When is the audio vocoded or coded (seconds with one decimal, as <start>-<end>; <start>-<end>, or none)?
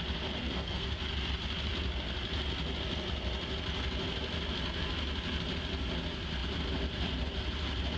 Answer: 0.4-1.0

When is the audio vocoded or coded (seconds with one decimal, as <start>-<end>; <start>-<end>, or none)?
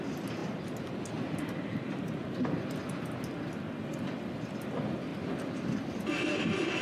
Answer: none